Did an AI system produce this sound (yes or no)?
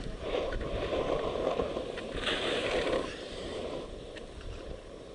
yes